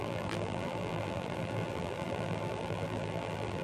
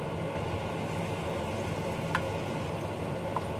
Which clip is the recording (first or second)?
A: second